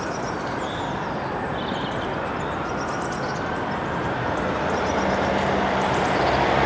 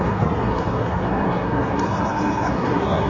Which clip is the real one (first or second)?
first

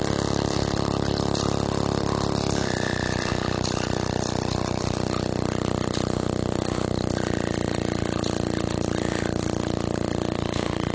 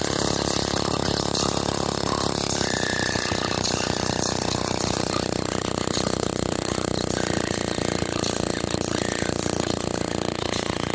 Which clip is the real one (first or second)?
first